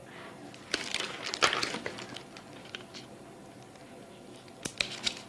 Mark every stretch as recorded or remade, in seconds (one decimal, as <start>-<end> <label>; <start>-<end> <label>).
0.0-5.3 recorded